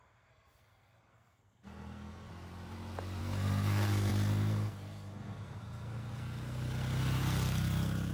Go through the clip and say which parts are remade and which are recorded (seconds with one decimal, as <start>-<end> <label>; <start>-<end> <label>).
0.0-2.3 remade; 2.3-3.2 recorded; 3.2-8.1 remade